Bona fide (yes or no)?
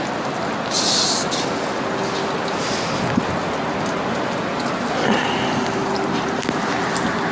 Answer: yes